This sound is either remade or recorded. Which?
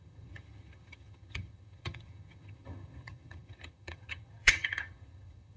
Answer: remade